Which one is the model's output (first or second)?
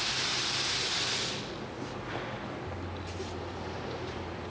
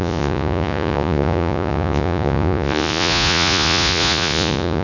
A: second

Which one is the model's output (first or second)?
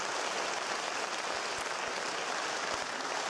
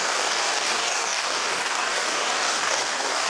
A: second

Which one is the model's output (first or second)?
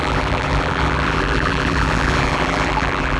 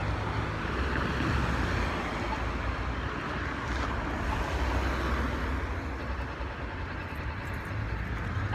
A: first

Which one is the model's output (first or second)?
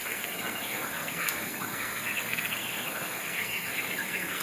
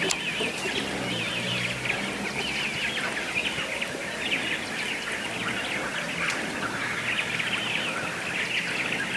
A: first